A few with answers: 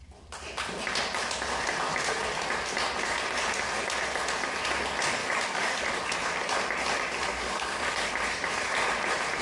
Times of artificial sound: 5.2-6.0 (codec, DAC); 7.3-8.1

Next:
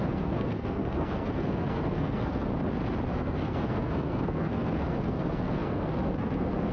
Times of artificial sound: 0.0-2.5 (codec, SNAC); 3.1-6.7

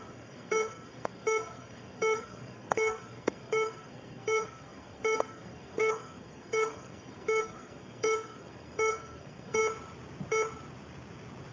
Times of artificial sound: 0.0-9.6 (codec, SNAC)

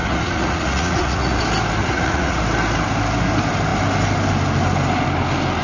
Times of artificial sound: 0.0-1.4 (vocoder, Vocos); 1.8-2.4

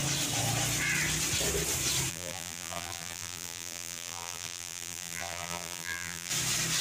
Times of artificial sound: 2.1-6.3 (vocoder, BigVGAN v2)

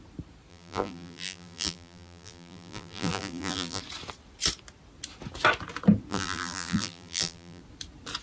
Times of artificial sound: 0.5-3.8 (vocoder, BigVGAN v2); 6.1-7.6

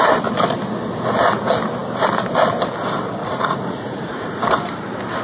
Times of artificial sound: 3.2-4.4 (vocoder, Vocos)